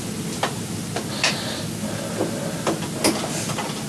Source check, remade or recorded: recorded